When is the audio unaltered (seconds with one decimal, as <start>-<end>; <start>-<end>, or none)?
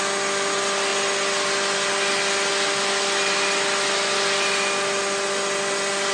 0.0-6.1